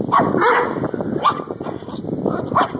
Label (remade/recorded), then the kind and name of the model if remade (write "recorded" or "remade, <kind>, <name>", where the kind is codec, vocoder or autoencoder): recorded